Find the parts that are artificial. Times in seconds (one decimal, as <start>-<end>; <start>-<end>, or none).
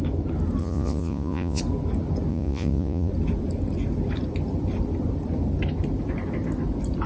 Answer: 0.6-1.6; 2.3-3.1